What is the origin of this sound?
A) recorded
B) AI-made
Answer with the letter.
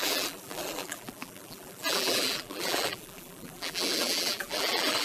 B